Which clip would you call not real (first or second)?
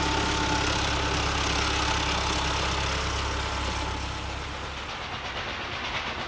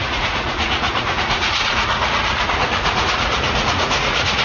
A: second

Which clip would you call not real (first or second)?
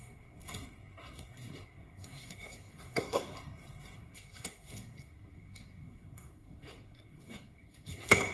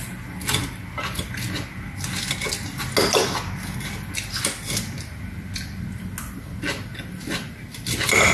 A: first